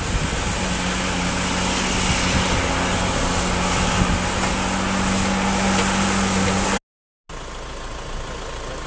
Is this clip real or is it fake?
real